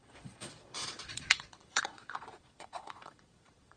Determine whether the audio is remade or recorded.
remade